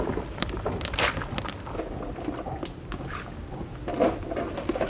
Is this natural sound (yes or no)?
yes